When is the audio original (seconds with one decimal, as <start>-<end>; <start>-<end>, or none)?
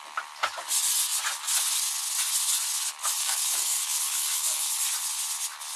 0.0-3.2; 4.7-5.8